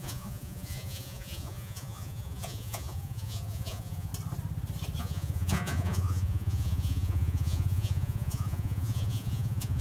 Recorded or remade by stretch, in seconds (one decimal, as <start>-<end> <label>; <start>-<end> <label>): 0.0-4.1 remade; 4.1-5.0 recorded; 5.0-9.8 remade